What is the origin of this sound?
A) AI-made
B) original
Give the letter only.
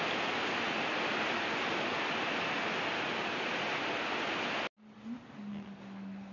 B